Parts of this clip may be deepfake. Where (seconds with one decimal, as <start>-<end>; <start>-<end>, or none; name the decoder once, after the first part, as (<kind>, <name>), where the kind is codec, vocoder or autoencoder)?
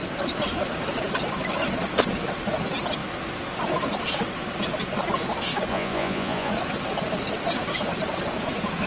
5.7-6.5 (vocoder, Vocos)